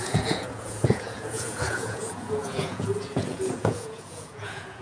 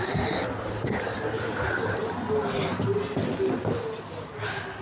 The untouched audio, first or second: second